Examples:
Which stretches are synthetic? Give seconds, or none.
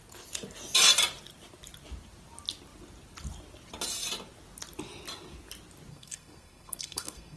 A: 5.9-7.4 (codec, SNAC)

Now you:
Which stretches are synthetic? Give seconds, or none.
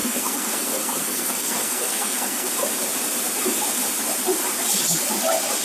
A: 0.0-2.5 (codec, SNAC)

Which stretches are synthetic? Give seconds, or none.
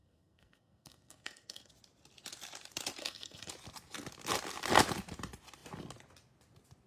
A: 0.0-1.7 (codec, SNAC); 3.0-3.5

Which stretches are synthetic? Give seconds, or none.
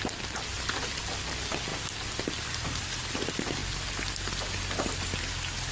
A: none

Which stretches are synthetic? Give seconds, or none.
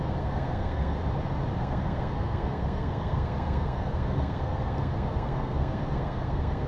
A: 0.0-1.0 (codec, SNAC); 1.6-6.7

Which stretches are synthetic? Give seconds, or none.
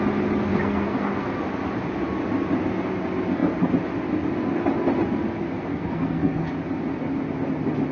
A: 0.5-1.4 (codec, SNAC); 5.7-6.5